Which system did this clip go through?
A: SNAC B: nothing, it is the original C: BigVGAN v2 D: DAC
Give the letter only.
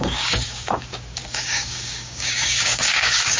D